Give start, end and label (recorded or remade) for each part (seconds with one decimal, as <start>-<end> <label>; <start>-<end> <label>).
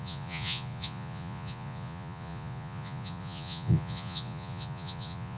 0.0-5.4 remade